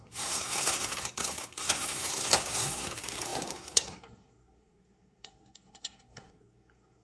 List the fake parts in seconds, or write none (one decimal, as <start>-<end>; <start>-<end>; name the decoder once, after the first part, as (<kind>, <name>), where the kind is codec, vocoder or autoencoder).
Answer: 0.0-7.0 (codec, SNAC)